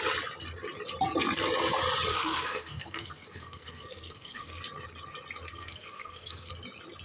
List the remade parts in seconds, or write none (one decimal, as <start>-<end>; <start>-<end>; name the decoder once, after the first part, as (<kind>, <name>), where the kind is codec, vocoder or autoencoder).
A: 2.1-4.6 (codec, SNAC); 5.5-6.5